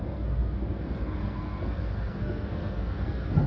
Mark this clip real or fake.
fake